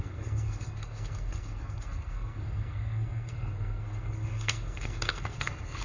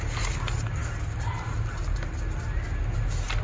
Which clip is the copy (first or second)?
first